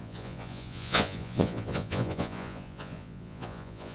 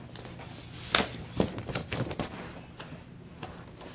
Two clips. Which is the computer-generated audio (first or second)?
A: first